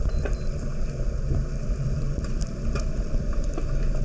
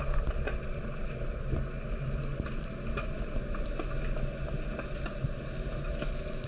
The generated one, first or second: first